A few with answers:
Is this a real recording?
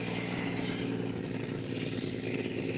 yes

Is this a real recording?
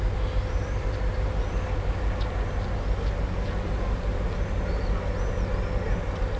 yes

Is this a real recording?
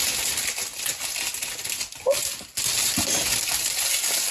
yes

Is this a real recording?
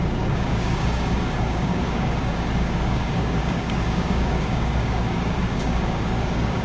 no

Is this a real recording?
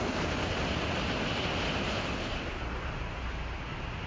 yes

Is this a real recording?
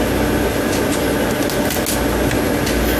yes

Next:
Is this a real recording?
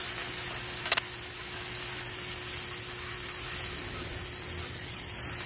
yes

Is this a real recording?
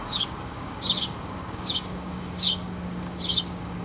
no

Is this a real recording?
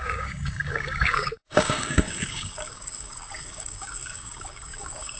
no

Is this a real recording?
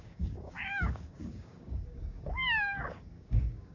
no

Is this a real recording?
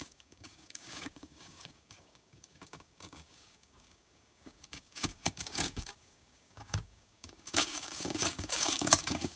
no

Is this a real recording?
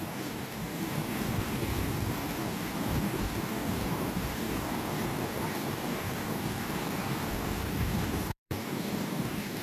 no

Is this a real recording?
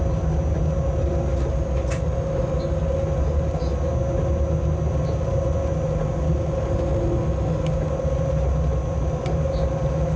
yes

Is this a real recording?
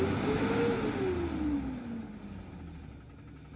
yes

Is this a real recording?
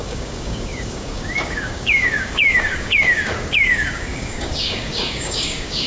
no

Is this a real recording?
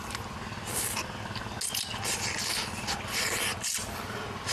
yes